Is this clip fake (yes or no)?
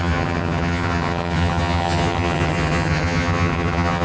yes